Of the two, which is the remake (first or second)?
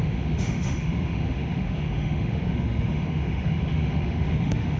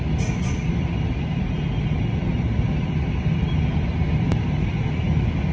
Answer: first